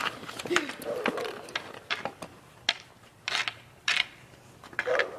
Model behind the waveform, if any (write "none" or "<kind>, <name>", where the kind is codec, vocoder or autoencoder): vocoder, BigVGAN v2